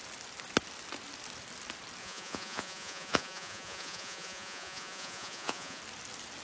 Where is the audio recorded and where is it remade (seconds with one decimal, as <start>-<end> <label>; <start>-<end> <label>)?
0.0-2.0 recorded; 2.0-5.8 remade; 5.8-6.4 recorded